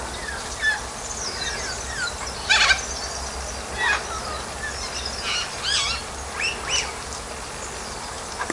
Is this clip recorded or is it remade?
recorded